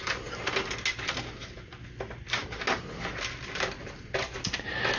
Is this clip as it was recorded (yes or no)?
yes